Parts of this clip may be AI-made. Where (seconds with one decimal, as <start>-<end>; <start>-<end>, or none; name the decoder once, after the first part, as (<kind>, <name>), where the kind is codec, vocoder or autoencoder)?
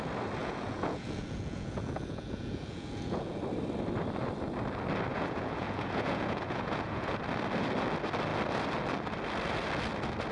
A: 0.4-3.4 (vocoder, Vocos); 5.1-7.1